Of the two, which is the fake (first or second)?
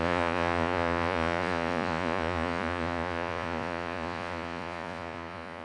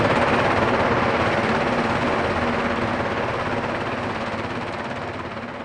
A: first